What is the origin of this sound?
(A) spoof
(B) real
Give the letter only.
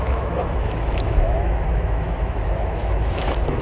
A